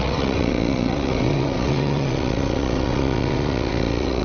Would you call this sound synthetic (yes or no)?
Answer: yes